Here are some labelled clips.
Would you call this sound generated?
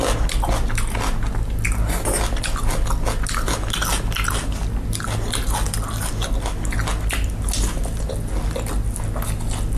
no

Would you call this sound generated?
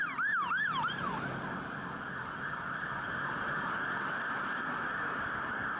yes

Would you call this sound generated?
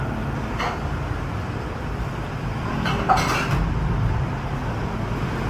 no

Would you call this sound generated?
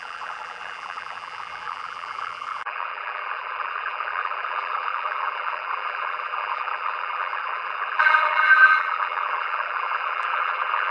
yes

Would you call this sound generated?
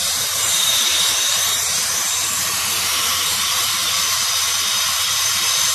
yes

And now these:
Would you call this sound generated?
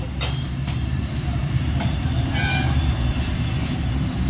yes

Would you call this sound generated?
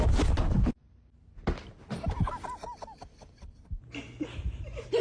no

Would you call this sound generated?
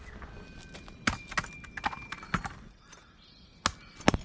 no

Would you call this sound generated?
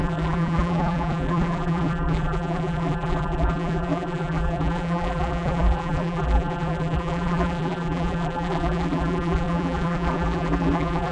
yes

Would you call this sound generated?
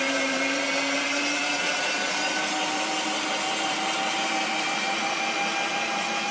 yes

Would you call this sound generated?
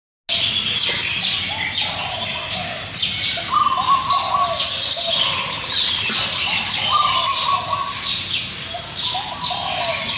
no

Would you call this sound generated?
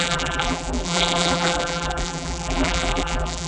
yes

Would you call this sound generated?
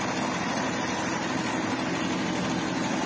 no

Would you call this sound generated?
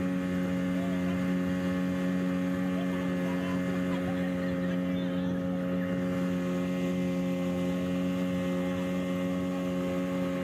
no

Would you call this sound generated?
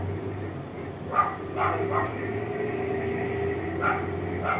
yes